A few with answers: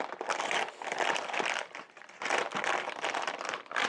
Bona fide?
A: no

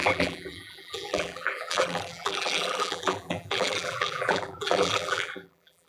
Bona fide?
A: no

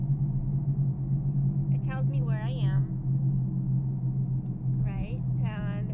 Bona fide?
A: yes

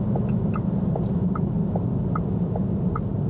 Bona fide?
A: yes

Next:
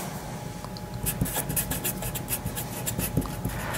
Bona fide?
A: yes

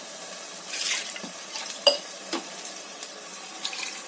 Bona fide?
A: no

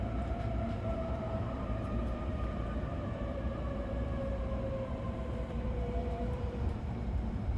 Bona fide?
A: no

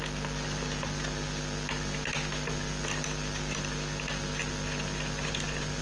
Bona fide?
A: yes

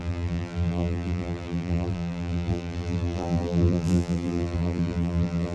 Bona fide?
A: no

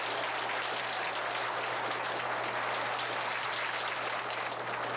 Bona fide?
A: yes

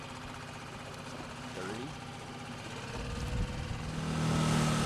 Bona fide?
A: yes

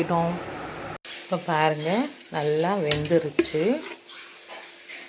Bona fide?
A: yes